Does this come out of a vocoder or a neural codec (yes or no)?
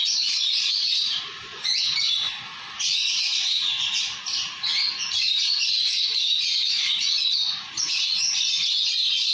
yes